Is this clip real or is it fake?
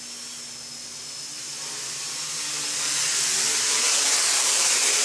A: real